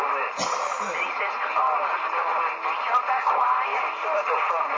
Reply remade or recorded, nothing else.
recorded